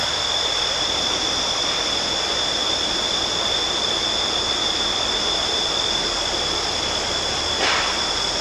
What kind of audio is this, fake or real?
fake